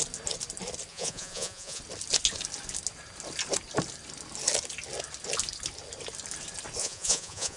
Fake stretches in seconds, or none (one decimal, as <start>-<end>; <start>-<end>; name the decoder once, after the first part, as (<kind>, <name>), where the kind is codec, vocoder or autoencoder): 0.9-1.8 (vocoder, Vocos); 6.8-7.6